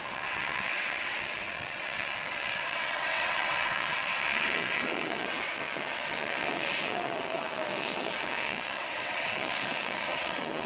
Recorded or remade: remade